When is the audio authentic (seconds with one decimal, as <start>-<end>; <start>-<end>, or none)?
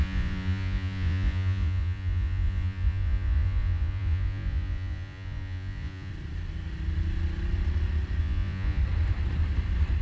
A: 6.1-8.2; 8.8-10.0